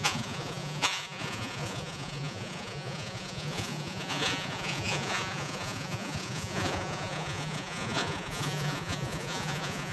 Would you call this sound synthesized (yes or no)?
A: yes